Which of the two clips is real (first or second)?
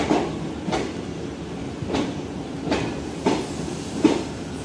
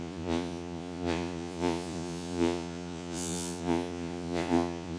first